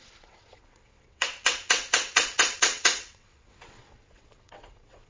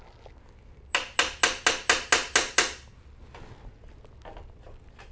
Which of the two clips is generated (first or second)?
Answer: first